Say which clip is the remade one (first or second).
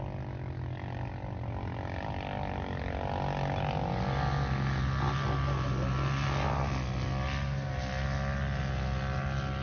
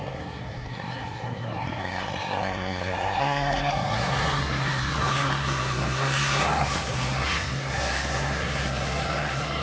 second